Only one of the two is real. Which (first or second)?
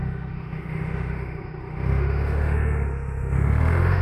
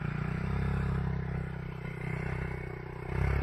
second